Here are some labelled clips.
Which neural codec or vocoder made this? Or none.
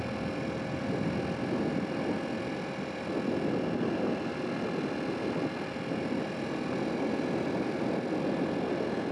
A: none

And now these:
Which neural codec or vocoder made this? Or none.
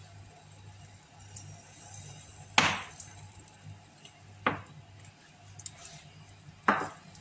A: none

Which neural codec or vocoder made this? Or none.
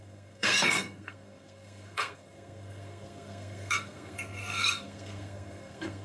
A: codec, SNAC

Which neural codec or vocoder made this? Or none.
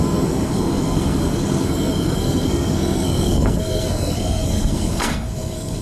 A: codec, SNAC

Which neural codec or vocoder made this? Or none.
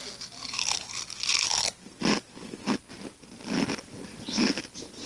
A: none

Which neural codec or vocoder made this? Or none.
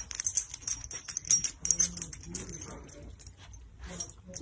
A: none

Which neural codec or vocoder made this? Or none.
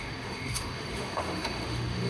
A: autoencoder, DAC-VAE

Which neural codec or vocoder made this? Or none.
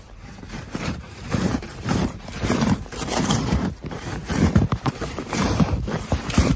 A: vocoder, BigVGAN v2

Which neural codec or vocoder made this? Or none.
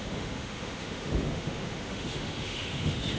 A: autoencoder, DAC-VAE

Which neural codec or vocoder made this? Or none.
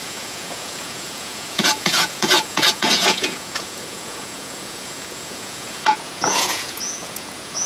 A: vocoder, Vocos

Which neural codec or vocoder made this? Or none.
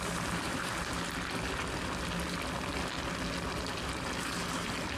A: none